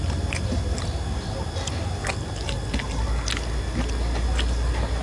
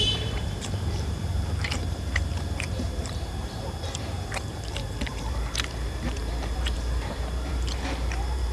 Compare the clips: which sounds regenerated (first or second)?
second